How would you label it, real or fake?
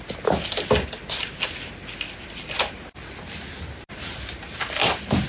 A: real